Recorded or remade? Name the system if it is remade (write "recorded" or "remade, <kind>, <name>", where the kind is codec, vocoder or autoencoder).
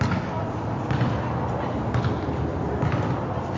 recorded